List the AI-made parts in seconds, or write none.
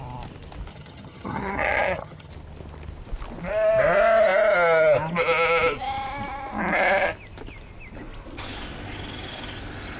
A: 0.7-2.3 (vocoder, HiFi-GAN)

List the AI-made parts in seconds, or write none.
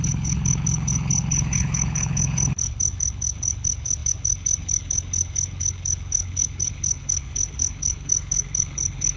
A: 0.0-9.2 (codec, HILCodec)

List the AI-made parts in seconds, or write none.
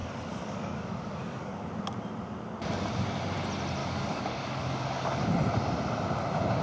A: 0.0-1.7 (codec, DAC); 3.8-5.3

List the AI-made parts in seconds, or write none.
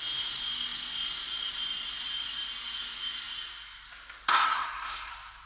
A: 4.3-5.1 (codec, SNAC)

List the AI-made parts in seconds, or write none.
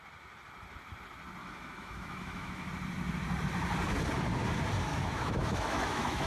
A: 1.4-2.7 (autoencoder, DAC-VAE); 4.9-6.3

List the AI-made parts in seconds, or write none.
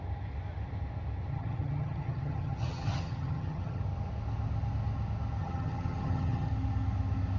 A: 1.3-3.8 (vocoder, HiFi-GAN); 5.4-6.5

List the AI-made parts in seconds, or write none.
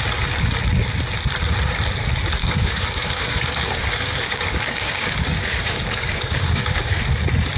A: 2.4-7.0 (codec, DAC)